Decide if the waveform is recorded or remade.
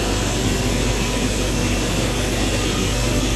remade